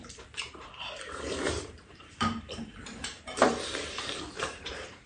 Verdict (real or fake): fake